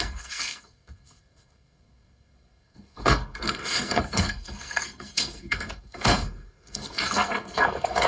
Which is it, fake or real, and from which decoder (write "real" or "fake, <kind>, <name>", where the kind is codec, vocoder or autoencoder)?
fake, codec, SNAC